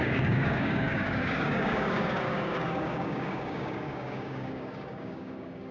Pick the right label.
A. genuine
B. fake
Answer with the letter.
B